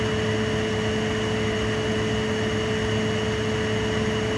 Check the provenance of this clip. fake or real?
real